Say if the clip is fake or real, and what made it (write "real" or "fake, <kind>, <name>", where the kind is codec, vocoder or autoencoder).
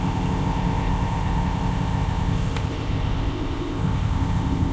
fake, codec, ZipCodec